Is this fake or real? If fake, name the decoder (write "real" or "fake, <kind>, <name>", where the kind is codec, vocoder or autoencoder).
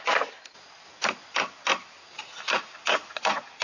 real